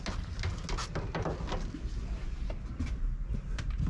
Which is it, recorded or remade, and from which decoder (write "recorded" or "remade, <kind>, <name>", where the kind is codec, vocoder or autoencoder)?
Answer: recorded